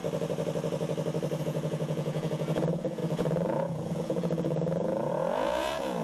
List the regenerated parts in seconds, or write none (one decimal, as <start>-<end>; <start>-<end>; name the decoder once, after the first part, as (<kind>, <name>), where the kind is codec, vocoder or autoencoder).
1.4-6.0 (vocoder, Vocos)